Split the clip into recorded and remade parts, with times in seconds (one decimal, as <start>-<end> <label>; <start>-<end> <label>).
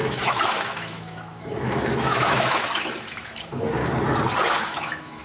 0.0-3.8 remade; 3.8-4.4 recorded; 4.4-5.2 remade